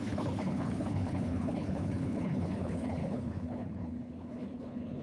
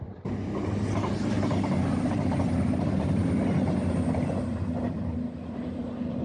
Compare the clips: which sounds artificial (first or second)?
first